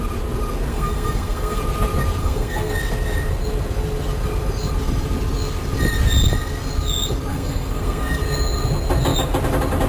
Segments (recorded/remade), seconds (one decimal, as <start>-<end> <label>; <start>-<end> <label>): 0.0-0.7 recorded; 0.7-1.6 remade; 1.6-2.2 recorded; 2.2-2.7 remade; 2.7-7.3 recorded; 7.3-8.2 remade; 8.2-9.9 recorded

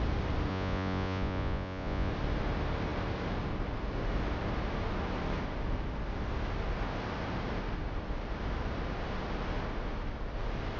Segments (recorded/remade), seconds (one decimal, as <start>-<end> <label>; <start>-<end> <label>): 0.0-0.5 recorded; 0.5-2.1 remade; 2.1-10.8 recorded

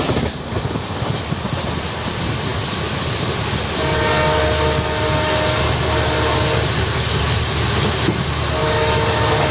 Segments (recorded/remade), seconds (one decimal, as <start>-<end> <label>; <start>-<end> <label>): 0.0-8.6 recorded; 8.6-9.1 remade; 9.1-9.5 recorded

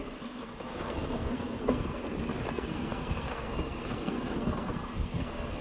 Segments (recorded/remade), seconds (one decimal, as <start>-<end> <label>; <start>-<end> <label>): 0.0-2.0 remade; 2.0-2.5 recorded; 2.5-5.6 remade